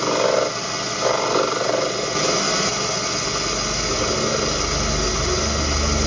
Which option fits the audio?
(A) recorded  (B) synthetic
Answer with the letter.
A